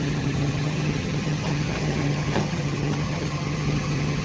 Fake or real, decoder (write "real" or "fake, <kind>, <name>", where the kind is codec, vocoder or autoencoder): fake, vocoder, HiFi-GAN